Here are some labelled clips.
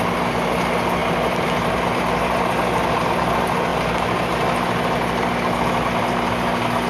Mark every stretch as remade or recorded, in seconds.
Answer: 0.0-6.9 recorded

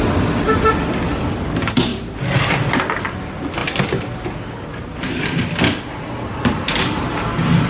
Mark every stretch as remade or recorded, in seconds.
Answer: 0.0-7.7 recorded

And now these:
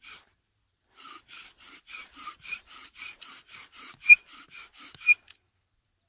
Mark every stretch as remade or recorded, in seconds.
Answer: 0.0-2.0 recorded; 2.0-4.5 remade; 4.5-6.1 recorded

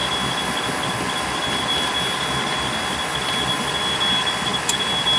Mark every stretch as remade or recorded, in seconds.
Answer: 0.0-5.2 recorded

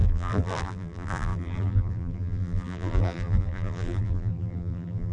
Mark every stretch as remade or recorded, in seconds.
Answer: 0.0-5.1 remade

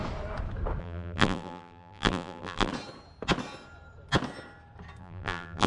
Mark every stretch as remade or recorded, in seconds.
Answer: 0.0-0.8 recorded; 0.8-2.7 remade; 2.7-5.0 recorded; 5.0-5.7 remade

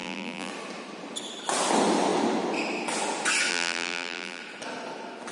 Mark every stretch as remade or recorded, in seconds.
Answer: 0.0-0.5 remade; 0.5-3.5 recorded; 3.5-4.4 remade; 4.4-5.3 recorded